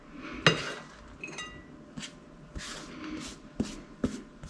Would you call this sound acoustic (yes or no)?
yes